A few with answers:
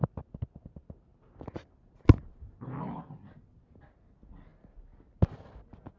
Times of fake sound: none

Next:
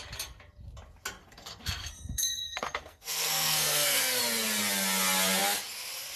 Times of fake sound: 1.2-4.2 (codec, SNAC)

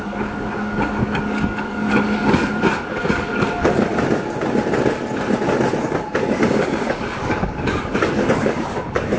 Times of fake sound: 0.0-3.9 (codec, DAC); 5.8-9.2

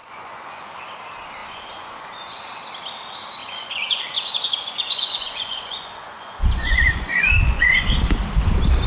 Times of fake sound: 0.0-0.7 (vocoder, Vocos); 1.4-2.4; 3.4-8.0

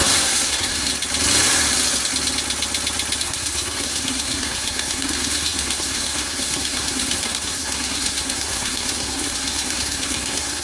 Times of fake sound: 0.0-0.9 (codec, SNAC); 3.2-10.6

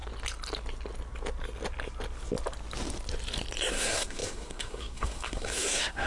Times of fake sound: 3.7-6.1 (codec, SNAC)

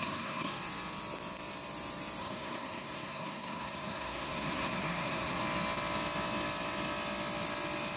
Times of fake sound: 0.0-0.5 (codec, SNAC); 2.2-5.4

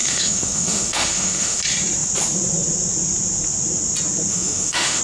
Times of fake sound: 0.0-1.6 (autoencoder, DAC-VAE); 4.3-5.0